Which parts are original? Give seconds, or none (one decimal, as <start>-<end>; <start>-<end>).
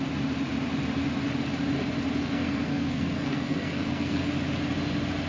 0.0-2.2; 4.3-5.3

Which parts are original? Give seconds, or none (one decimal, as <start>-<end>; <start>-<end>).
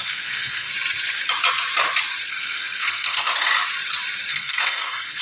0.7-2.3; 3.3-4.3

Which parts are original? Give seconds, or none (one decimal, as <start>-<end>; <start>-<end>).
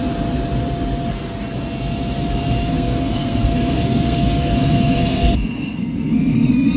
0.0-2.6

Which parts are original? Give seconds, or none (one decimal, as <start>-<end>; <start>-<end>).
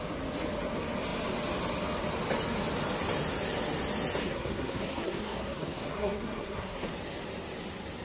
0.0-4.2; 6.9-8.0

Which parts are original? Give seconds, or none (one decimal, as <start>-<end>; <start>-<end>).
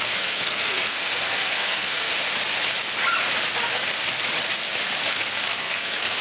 2.1-5.1